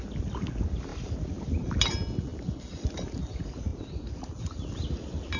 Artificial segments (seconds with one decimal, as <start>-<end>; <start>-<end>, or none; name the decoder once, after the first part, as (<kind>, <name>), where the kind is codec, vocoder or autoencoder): none